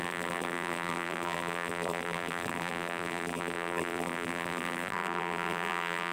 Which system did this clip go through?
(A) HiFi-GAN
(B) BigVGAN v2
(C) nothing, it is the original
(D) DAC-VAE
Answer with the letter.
B